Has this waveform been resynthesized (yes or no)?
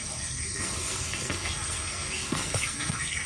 yes